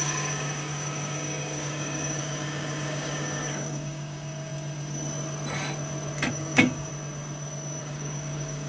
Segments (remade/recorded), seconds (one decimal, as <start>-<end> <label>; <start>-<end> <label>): 0.0-4.5 remade; 4.5-6.3 recorded; 6.3-6.9 remade; 6.9-7.8 recorded; 7.8-8.7 remade